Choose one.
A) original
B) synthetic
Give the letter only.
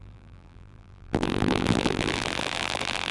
B